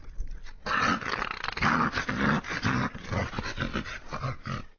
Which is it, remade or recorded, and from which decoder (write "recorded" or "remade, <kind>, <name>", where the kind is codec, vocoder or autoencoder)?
recorded